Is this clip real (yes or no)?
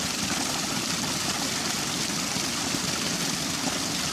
yes